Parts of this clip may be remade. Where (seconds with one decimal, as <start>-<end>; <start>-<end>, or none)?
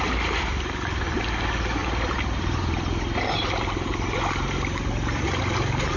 1.8-5.4